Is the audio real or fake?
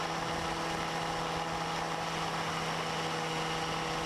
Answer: real